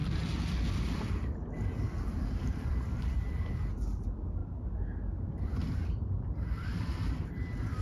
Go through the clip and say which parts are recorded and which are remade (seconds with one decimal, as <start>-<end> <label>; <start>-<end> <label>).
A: 0.0-4.4 remade; 4.4-5.2 recorded; 5.2-7.8 remade